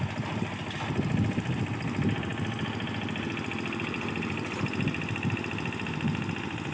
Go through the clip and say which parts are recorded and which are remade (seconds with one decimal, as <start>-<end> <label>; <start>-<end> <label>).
0.0-6.7 recorded